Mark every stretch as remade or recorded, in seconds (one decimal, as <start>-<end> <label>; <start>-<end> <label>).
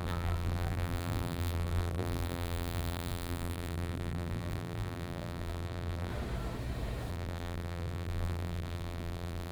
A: 0.0-6.1 remade; 6.1-7.1 recorded; 7.1-9.5 remade